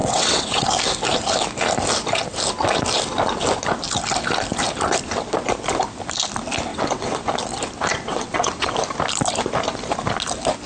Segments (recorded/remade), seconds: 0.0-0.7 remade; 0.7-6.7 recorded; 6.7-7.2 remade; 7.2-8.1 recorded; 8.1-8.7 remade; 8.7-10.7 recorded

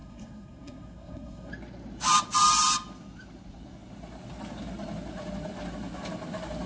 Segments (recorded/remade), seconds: 0.0-1.5 remade; 1.5-6.7 recorded

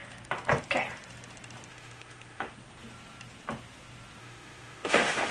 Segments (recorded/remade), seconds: 0.0-1.7 recorded; 1.7-2.5 remade; 2.5-4.2 recorded; 4.2-5.3 remade

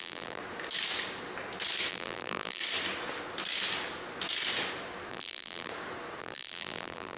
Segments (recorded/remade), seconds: 0.0-0.4 remade; 0.4-1.9 recorded; 1.9-2.6 remade; 2.6-5.1 recorded; 5.1-5.7 remade; 5.7-6.2 recorded; 6.2-7.2 remade

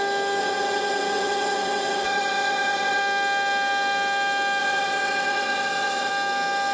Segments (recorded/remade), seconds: 0.0-0.4 recorded; 0.4-3.0 remade; 3.0-4.6 recorded; 4.6-6.1 remade; 6.1-6.7 recorded

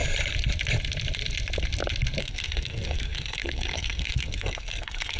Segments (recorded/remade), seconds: 0.0-2.2 recorded; 2.2-5.2 remade

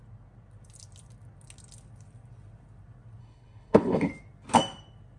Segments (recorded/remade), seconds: 0.0-3.2 recorded; 3.2-4.1 remade; 4.1-5.2 recorded

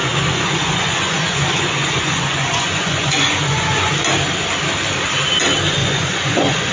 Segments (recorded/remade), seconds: 0.0-3.9 remade; 3.9-5.8 recorded; 5.8-6.7 remade